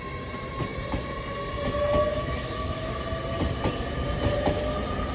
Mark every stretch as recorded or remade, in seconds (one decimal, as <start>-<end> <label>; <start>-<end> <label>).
0.0-2.1 recorded; 2.1-3.0 remade; 3.0-5.1 recorded